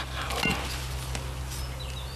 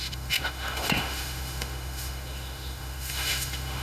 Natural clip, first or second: first